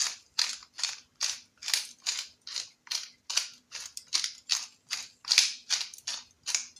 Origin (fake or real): real